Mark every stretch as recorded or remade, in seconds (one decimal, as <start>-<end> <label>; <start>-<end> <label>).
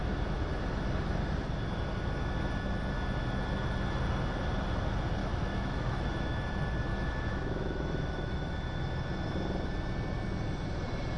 0.0-5.2 recorded; 5.2-6.4 remade; 6.4-6.9 recorded; 6.9-8.5 remade; 8.5-11.2 recorded